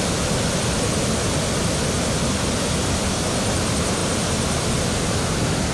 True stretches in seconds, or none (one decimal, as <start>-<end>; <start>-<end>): 0.0-4.0